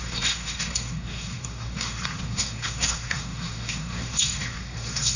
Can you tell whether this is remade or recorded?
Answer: remade